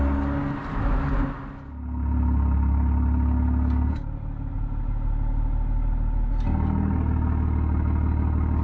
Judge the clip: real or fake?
real